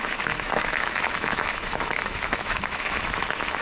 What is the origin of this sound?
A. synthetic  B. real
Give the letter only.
A